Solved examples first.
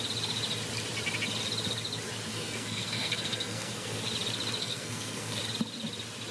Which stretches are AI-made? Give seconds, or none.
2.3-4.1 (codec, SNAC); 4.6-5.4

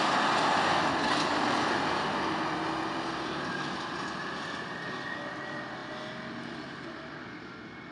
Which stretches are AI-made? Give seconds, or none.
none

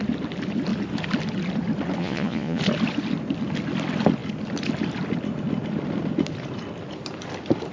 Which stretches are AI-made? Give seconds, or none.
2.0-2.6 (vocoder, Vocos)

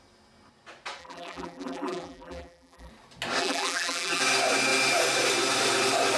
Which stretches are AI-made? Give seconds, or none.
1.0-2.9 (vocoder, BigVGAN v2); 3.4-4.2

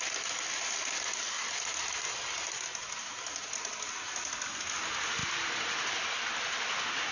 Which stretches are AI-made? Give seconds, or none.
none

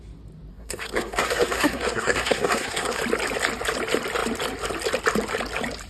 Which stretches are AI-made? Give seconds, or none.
0.5-3.0 (codec, SNAC)

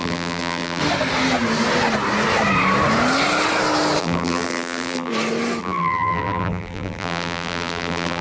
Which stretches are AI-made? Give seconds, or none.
0.0-0.8 (vocoder, BigVGAN v2); 4.0-5.1; 5.6-8.2

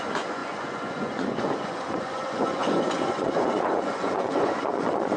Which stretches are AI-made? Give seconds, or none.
0.0-5.2 (vocoder, Vocos)